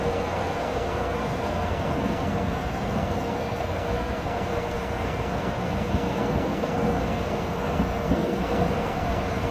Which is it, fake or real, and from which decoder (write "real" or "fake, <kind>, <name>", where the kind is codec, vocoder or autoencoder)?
fake, codec, SNAC